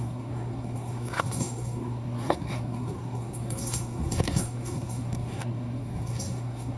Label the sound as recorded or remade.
remade